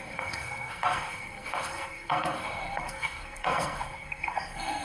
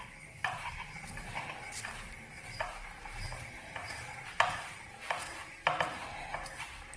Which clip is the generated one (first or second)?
first